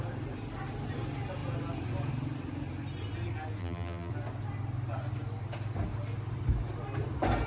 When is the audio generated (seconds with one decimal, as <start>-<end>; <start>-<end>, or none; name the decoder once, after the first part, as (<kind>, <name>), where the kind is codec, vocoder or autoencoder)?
3.6-4.1 (vocoder, BigVGAN v2)